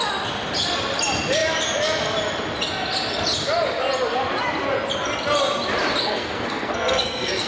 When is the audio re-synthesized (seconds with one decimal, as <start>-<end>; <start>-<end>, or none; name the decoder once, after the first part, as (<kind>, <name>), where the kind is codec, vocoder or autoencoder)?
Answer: 6.0-7.5 (codec, SNAC)